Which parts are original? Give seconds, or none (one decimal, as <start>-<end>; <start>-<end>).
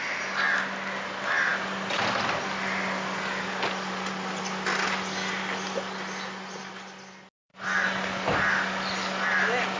0.0-9.8